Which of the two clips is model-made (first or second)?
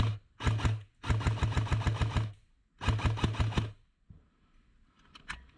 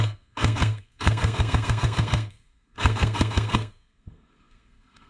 second